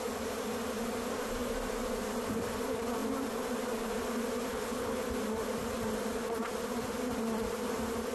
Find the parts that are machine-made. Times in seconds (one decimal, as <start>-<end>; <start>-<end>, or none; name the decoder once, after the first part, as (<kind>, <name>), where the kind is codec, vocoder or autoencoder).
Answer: 4.5-5.0 (codec, HILCodec)